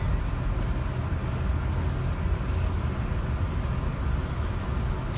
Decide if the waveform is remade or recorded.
recorded